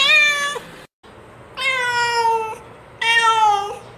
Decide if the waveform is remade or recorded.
recorded